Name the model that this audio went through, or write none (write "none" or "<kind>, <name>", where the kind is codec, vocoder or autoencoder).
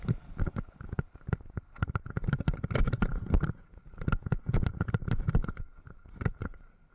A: none